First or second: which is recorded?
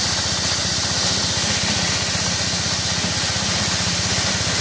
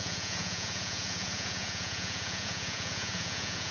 first